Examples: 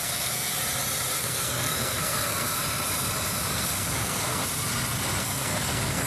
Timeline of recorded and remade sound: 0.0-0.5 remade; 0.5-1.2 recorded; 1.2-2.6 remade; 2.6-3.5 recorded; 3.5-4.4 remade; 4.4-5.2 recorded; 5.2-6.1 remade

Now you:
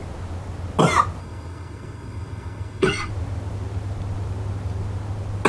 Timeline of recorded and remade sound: 0.0-1.2 recorded; 1.2-3.1 remade; 3.1-5.5 recorded

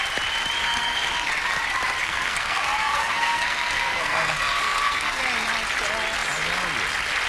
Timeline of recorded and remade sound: 0.0-0.6 recorded; 0.6-1.3 remade; 1.3-2.0 recorded; 2.0-5.2 remade; 5.2-7.3 recorded